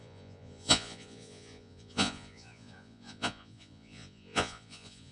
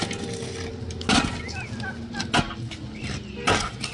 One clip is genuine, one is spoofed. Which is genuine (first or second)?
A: second